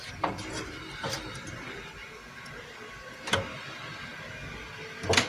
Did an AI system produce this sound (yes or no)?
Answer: no